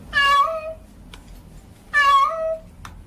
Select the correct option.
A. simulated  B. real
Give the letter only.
B